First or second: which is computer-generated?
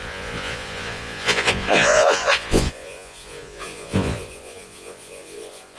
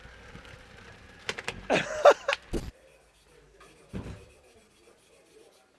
first